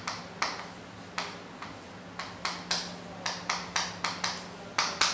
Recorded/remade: recorded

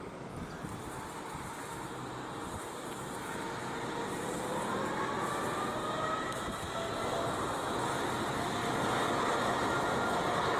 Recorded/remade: recorded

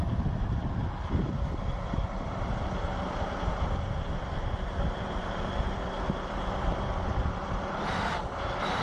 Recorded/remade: remade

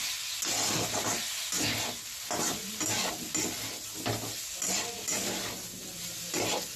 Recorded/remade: recorded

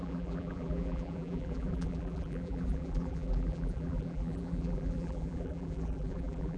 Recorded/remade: remade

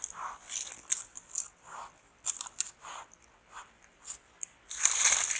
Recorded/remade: remade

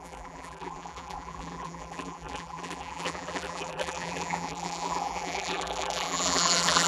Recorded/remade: remade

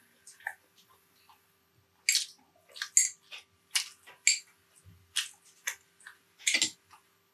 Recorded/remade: recorded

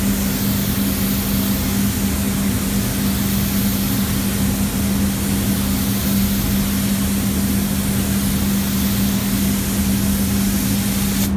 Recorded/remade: recorded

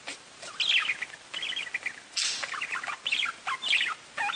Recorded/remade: recorded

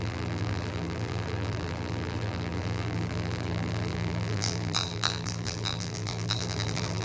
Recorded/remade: remade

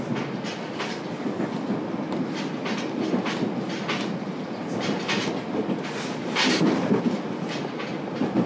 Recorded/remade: recorded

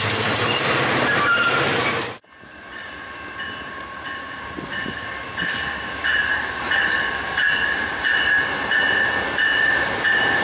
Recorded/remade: remade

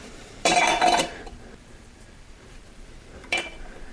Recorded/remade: remade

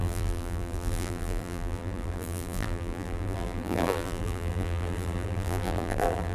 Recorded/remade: remade